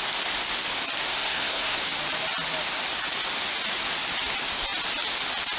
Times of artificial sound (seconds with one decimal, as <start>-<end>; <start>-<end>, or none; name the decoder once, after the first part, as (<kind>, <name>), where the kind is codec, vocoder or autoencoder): 1.1-1.8 (codec, SNAC)